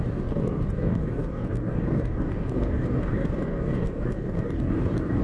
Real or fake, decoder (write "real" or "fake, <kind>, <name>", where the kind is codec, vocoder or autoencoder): fake, codec, DAC